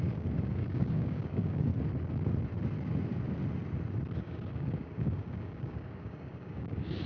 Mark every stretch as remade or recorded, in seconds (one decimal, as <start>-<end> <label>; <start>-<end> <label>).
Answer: 0.0-1.7 remade; 1.7-4.2 recorded; 4.2-7.1 remade